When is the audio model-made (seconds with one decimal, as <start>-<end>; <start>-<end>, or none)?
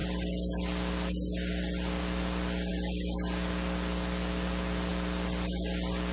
none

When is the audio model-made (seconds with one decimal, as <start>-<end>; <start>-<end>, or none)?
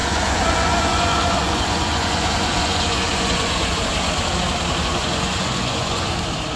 0.0-3.9; 4.8-6.1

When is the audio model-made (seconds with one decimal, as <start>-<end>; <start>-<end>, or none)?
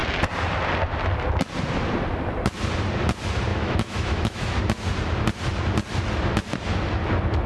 3.5-4.6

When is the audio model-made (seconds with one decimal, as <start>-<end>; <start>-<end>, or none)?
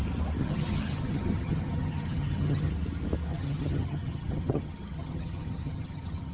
0.4-2.7; 3.3-6.3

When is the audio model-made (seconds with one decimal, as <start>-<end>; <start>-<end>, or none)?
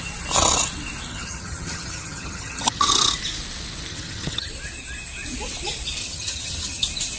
1.1-2.9; 3.9-4.5; 6.0-6.8